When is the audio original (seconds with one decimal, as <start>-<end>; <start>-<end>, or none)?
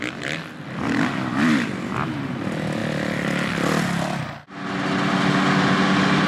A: 0.0-6.3